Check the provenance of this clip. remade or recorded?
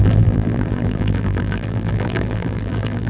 remade